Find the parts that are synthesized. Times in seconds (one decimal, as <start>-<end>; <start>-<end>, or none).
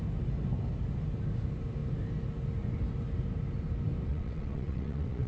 4.1-5.3